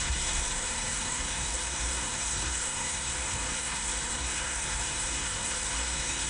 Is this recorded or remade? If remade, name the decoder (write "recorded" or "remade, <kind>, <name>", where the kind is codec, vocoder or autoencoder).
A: remade, codec, SNAC